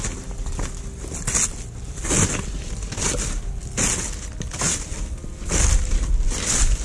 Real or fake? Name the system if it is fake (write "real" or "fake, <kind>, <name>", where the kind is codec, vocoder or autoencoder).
real